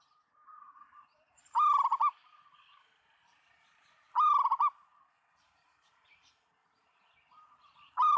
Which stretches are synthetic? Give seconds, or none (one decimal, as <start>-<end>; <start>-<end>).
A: none